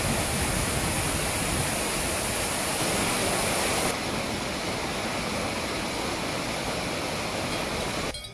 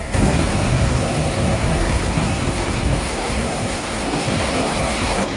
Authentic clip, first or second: first